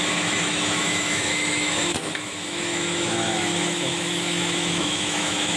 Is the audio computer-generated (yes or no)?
yes